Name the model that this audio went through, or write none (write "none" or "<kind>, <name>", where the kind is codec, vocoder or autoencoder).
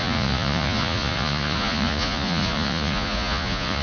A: vocoder, Vocos